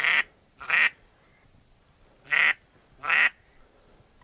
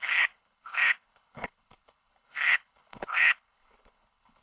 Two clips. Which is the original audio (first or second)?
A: first